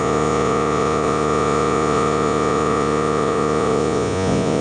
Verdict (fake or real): fake